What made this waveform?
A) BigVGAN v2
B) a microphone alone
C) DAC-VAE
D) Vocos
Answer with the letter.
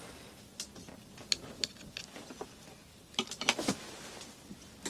B